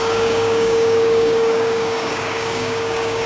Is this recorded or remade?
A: remade